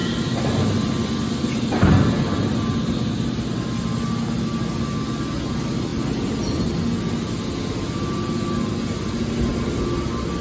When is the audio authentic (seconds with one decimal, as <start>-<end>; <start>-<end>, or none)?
0.0-10.4